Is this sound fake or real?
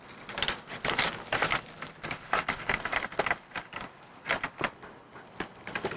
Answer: real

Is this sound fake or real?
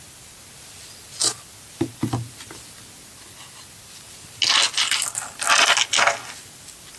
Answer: real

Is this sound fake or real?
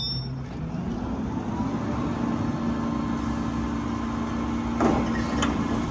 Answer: real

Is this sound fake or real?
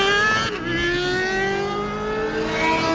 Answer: real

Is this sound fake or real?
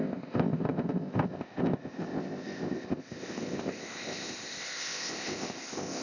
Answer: fake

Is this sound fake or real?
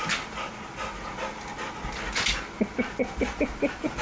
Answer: real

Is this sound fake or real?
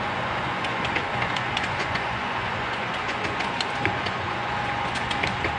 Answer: fake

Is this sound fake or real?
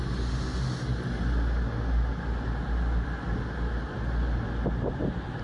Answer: real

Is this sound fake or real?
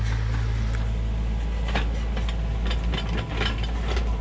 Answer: real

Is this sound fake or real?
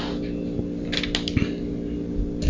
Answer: real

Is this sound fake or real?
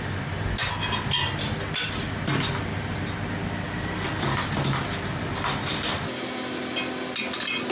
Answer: real